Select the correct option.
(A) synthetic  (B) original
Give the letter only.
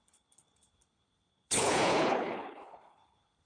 A